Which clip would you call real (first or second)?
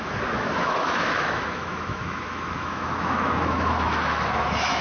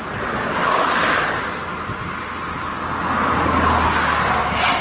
second